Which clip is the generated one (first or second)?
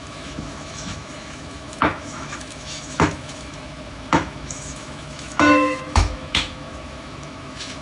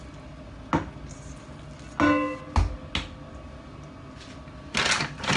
first